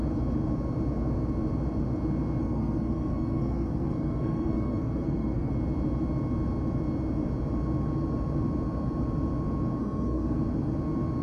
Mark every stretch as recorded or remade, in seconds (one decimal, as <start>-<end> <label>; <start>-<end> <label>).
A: 0.0-2.4 recorded; 2.4-5.5 remade; 5.5-9.8 recorded; 9.8-10.4 remade; 10.4-11.2 recorded